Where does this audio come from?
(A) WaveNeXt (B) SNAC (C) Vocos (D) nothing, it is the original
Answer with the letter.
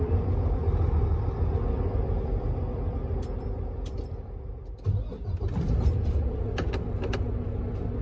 D